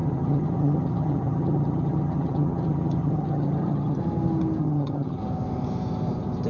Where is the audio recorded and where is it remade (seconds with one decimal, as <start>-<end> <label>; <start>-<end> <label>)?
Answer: 0.0-4.0 remade; 4.0-4.6 recorded; 4.6-5.2 remade; 5.2-6.5 recorded